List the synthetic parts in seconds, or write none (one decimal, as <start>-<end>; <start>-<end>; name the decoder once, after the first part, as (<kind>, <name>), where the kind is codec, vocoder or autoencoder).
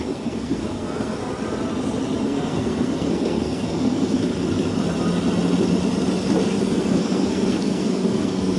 0.0-1.2 (codec, SNAC); 2.2-4.3; 6.6-8.6